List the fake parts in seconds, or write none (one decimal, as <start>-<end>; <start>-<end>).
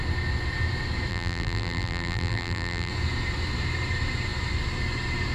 1.1-2.9